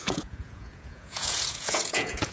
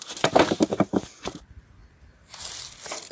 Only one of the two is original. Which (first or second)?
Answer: second